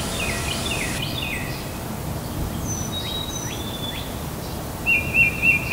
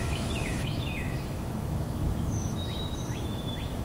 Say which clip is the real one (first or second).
first